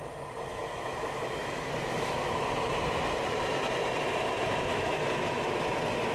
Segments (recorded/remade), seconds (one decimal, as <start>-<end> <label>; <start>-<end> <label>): 0.0-0.5 recorded; 0.5-2.3 remade; 2.3-4.7 recorded; 4.7-6.1 remade